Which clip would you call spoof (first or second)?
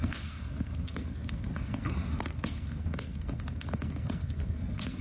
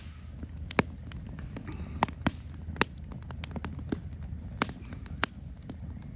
first